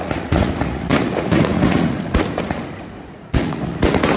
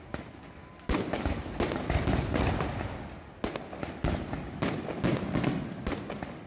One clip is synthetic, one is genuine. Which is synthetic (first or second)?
first